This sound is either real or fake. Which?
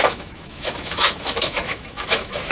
fake